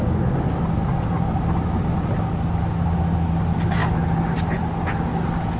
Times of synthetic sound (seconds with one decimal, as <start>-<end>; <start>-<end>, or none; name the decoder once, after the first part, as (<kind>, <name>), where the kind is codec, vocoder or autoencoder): none